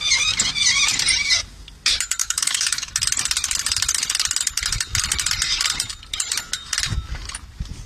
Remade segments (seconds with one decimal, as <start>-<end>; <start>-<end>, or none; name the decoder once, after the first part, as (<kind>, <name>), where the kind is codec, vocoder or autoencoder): 2.2-2.9 (codec, DAC)